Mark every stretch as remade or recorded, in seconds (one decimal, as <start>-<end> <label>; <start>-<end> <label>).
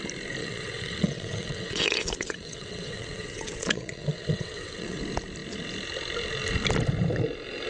0.0-0.4 recorded; 0.4-5.0 remade; 5.0-7.7 recorded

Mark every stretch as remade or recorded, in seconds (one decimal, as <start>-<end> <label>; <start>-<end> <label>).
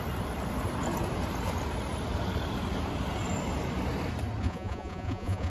0.0-4.4 recorded; 4.4-5.5 remade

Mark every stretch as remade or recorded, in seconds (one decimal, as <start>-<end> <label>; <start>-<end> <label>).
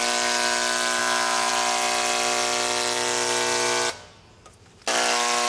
0.0-1.0 recorded; 1.0-1.5 remade; 1.5-5.5 recorded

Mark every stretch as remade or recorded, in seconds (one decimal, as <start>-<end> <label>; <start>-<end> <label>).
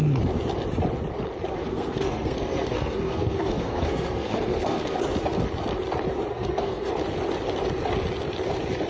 0.0-1.6 recorded; 1.6-5.0 remade; 5.0-6.3 recorded; 6.3-6.9 remade; 6.9-8.9 recorded